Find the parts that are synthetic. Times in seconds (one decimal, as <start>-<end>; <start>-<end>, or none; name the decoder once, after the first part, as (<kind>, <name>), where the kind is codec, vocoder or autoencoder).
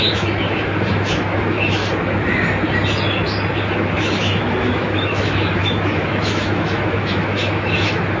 0.0-1.8 (autoencoder, DAC-VAE); 3.6-8.2